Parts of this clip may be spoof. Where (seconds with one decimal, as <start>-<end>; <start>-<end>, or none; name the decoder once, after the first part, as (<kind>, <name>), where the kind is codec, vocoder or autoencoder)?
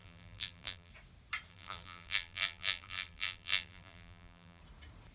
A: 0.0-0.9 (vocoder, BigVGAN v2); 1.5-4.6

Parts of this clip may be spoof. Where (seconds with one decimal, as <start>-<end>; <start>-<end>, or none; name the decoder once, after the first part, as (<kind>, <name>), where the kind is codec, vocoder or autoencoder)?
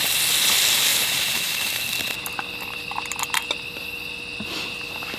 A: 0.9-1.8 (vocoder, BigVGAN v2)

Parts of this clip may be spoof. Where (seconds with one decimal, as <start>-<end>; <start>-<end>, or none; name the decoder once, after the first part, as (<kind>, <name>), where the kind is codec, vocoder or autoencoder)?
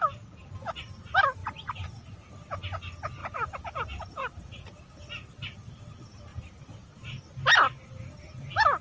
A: 3.2-5.8 (vocoder, BigVGAN v2); 6.3-7.1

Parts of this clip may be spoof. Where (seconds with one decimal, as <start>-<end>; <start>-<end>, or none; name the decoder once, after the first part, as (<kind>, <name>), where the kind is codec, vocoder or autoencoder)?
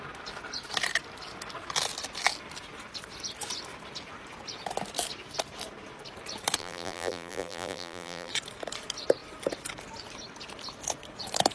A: 6.6-8.3 (vocoder, BigVGAN v2)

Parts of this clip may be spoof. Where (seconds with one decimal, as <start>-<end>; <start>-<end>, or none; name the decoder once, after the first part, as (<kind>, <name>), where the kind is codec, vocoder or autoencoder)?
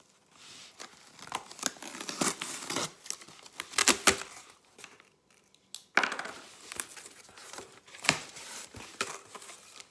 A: 0.6-1.2 (vocoder, BigVGAN v2); 7.4-9.0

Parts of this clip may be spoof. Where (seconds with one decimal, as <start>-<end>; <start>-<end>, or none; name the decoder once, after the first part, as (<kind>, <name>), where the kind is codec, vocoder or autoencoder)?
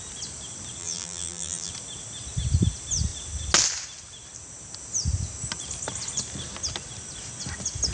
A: 0.8-1.7 (vocoder, BigVGAN v2)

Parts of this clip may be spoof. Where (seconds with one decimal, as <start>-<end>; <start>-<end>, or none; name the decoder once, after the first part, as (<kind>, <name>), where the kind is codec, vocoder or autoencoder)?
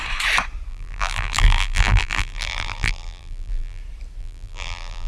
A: 0.7-3.8 (vocoder, BigVGAN v2); 4.2-5.1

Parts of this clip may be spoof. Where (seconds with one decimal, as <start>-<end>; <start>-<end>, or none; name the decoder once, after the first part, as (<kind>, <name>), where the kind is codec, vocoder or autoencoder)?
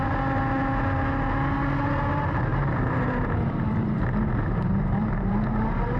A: 2.5-6.0 (vocoder, BigVGAN v2)